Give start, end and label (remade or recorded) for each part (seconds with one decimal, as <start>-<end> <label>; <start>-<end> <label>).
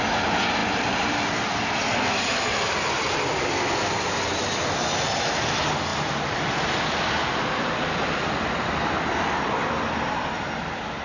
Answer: 0.0-0.6 recorded; 0.6-1.3 remade; 1.3-2.5 recorded; 2.5-3.5 remade; 3.5-11.0 recorded